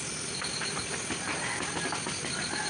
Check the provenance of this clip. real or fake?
real